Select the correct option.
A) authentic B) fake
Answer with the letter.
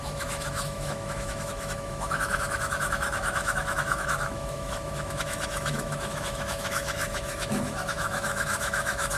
B